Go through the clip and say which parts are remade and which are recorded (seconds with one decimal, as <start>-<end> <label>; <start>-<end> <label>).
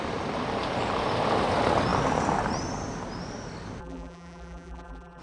0.0-3.8 recorded; 3.8-5.2 remade